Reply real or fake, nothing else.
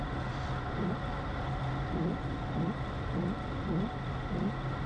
real